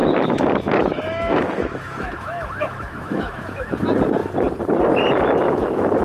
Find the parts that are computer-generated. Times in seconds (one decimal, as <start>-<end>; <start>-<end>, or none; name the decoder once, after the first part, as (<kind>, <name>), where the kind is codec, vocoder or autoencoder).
0.0-3.6 (autoencoder, DAC-VAE)